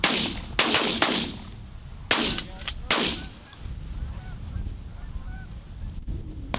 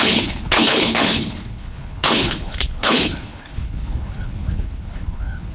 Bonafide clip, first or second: first